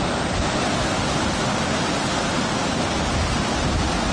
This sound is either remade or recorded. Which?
recorded